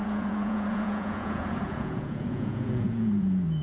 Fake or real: fake